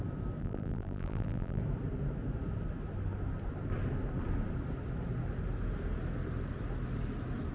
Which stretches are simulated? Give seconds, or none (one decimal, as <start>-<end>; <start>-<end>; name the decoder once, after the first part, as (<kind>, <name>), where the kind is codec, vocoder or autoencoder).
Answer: 0.4-1.6 (vocoder, BigVGAN v2)